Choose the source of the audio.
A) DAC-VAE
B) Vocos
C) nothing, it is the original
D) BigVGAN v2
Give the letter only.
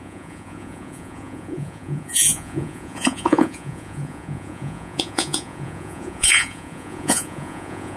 B